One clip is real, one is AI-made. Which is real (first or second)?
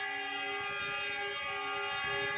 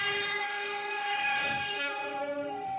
first